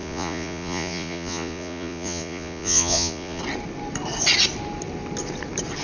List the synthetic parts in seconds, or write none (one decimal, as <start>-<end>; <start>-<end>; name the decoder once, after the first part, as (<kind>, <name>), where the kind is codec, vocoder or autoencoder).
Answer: 0.0-3.4 (vocoder, Vocos)